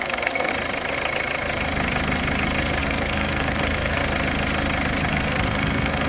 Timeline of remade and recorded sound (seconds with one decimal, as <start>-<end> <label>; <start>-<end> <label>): 0.0-0.5 remade; 0.5-2.8 recorded; 2.8-4.0 remade; 4.0-5.1 recorded; 5.1-6.1 remade